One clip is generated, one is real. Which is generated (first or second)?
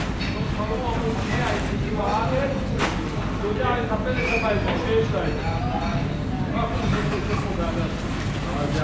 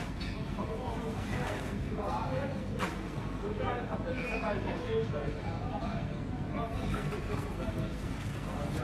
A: second